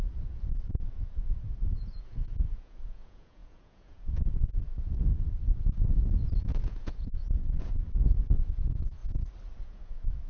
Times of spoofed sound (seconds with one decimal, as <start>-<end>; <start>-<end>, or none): 0.0-5.1; 5.8-9.0; 9.6-10.3